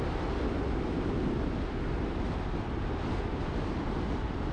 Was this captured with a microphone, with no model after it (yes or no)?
yes